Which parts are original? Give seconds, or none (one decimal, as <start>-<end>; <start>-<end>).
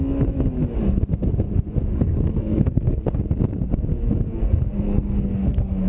0.0-1.9; 3.2-4.4